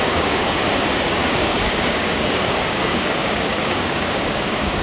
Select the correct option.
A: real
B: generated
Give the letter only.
B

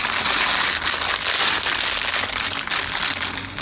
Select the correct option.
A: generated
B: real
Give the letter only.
B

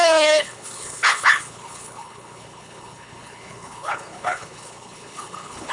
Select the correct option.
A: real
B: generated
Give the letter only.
B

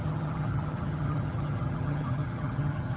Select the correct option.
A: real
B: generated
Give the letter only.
B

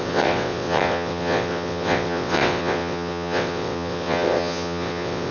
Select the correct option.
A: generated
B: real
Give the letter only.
A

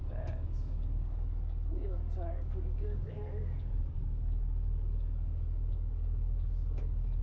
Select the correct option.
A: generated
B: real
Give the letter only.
A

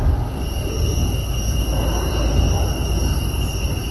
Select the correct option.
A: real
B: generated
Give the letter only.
A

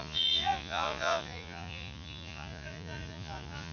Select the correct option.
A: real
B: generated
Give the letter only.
B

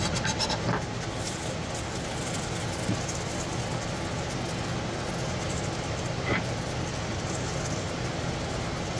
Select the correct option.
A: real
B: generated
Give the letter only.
A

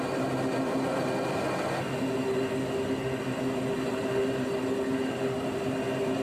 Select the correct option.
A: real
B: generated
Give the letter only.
A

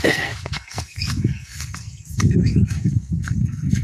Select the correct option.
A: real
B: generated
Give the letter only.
B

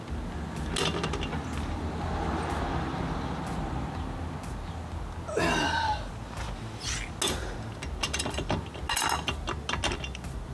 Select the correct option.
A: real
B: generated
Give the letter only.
A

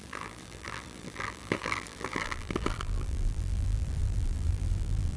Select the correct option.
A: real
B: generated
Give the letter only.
B